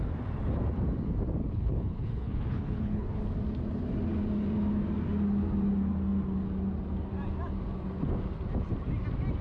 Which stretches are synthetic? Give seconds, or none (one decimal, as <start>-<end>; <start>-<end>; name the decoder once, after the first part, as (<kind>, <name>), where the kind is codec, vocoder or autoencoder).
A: 1.4-3.2 (codec, HILCodec)

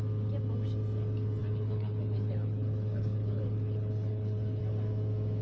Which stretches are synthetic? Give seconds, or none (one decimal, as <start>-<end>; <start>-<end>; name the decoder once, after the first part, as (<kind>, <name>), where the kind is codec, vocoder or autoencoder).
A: 1.4-4.6 (codec, HILCodec)

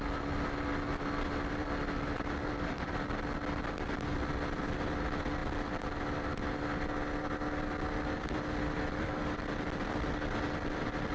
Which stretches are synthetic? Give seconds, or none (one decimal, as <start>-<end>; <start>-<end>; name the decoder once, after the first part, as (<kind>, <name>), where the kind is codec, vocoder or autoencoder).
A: none

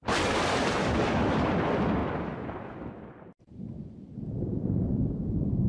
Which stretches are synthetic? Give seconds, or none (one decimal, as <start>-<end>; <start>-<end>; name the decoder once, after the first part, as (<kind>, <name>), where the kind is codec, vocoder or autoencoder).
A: none

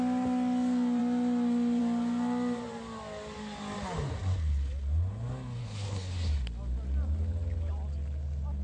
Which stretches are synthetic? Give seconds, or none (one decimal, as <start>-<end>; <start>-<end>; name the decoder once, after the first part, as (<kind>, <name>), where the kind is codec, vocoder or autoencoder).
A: 5.6-6.3 (codec, HILCodec)

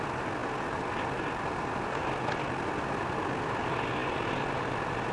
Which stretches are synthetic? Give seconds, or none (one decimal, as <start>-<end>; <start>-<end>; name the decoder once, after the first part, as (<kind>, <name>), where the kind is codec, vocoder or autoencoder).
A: none

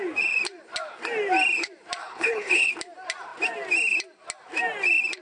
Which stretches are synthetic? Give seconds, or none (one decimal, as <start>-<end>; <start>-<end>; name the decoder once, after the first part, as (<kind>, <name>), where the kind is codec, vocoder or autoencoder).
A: 2.0-2.7 (codec, HILCodec)